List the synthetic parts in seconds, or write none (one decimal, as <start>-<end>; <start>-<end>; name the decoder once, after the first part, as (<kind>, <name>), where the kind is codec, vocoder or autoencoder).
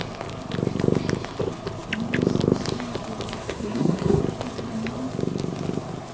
3.4-4.2 (codec, SNAC)